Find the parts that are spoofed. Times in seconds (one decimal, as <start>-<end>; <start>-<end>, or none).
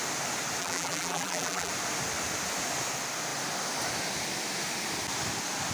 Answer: 0.6-1.7